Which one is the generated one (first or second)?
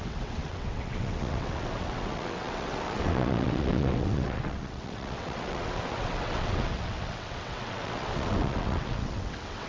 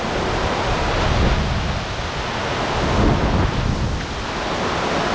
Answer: first